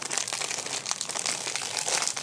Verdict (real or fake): real